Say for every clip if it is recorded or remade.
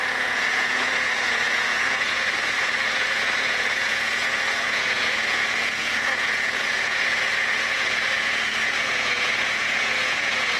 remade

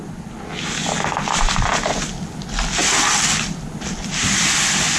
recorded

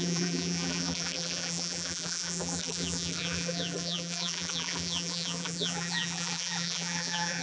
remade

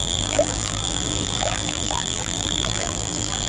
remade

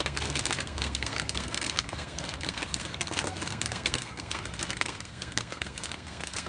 remade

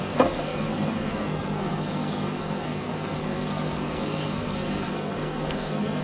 remade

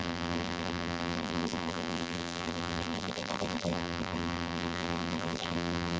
remade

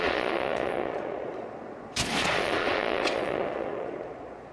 remade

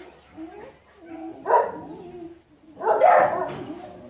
recorded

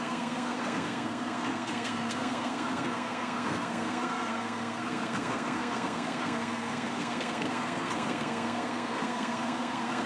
remade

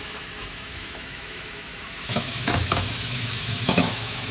remade